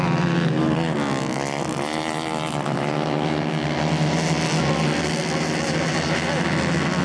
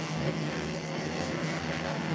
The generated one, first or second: second